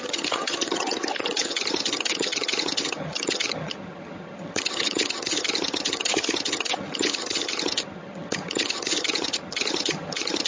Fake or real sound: fake